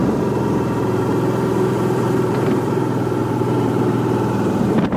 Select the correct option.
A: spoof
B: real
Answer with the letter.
A